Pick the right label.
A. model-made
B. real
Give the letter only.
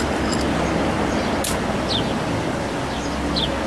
B